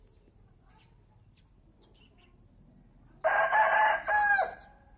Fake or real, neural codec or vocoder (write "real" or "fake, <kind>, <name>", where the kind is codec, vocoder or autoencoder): real